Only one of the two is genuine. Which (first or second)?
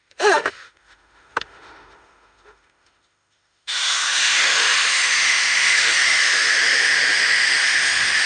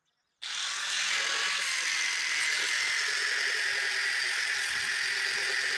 second